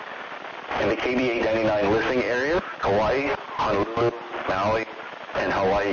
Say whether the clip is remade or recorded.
recorded